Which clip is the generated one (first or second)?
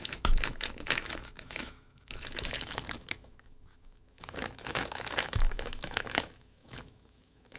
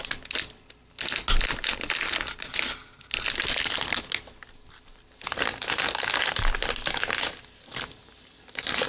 first